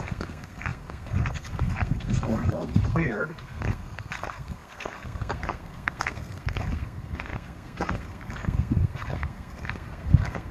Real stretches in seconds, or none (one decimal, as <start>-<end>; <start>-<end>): none